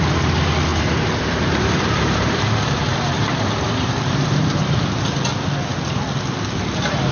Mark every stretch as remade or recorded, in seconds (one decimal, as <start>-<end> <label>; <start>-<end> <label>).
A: 0.0-0.7 recorded; 0.7-5.0 remade; 5.0-7.1 recorded